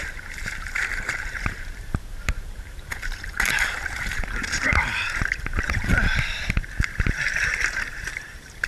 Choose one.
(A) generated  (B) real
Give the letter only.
A